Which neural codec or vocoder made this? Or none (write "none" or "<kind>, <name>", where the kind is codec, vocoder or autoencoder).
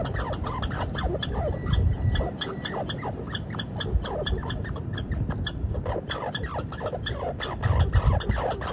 none